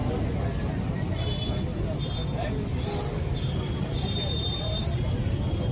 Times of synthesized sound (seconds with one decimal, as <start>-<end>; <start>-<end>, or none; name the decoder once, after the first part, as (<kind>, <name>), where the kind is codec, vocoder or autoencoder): 3.4-5.7 (vocoder, BigVGAN v2)